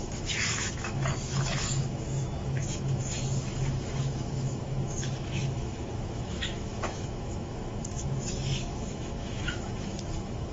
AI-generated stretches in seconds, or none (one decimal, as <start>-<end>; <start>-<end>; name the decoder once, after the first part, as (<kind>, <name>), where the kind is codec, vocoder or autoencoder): 0.0-10.5 (autoencoder, DAC-VAE)